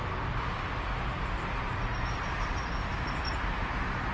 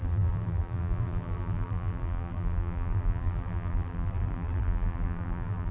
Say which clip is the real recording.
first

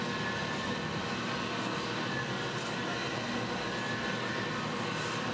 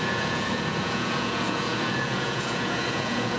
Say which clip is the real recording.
first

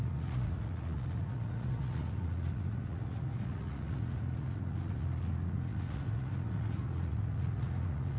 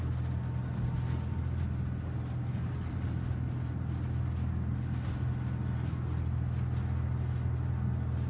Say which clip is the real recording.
second